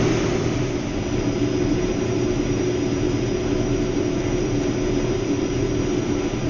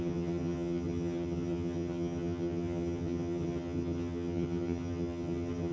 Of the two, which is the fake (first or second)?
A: second